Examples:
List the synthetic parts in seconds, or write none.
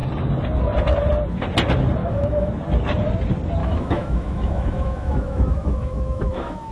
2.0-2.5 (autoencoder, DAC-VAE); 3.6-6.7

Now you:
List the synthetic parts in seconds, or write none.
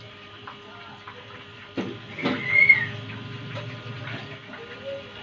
none